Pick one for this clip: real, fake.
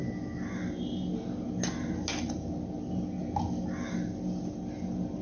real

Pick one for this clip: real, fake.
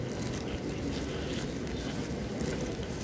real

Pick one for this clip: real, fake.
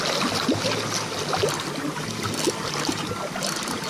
real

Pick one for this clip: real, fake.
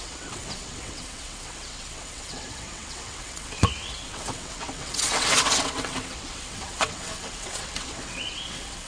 fake